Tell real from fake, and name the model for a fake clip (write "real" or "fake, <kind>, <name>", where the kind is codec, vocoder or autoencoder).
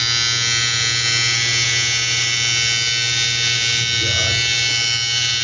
real